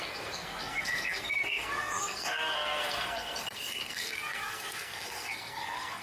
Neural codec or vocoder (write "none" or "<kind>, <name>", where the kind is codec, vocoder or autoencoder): codec, SNAC